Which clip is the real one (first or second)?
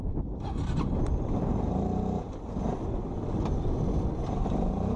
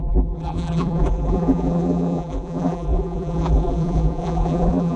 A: first